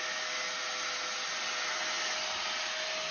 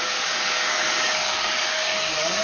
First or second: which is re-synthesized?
second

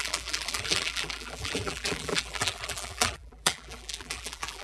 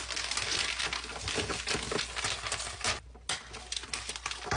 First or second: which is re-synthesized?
first